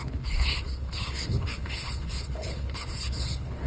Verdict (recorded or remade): remade